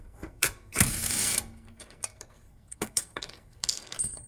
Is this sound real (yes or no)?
no